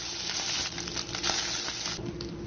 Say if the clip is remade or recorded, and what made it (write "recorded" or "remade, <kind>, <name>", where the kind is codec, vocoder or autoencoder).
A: recorded